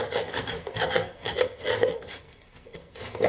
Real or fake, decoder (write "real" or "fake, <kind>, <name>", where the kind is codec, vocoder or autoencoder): fake, codec, SNAC